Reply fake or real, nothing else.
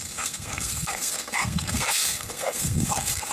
fake